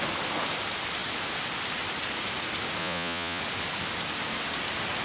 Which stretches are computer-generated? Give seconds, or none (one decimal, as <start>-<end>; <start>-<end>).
2.8-3.4